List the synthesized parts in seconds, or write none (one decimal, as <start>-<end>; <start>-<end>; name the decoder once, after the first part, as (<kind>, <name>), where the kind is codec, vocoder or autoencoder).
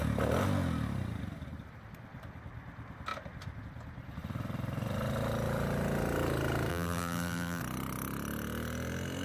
6.7-7.6 (vocoder, BigVGAN v2)